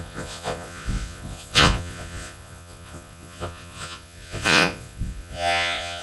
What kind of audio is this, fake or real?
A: fake